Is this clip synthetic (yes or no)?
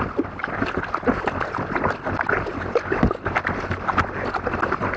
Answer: no